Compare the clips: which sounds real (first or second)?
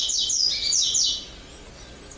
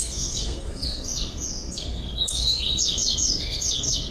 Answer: first